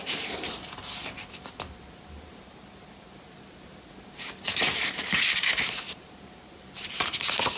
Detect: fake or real fake